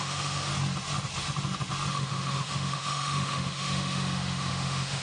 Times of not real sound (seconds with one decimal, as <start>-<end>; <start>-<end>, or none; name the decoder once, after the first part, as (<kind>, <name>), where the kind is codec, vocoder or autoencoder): 0.0-0.5 (autoencoder, DAC-VAE); 1.9-5.0